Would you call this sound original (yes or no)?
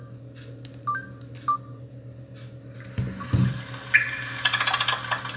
yes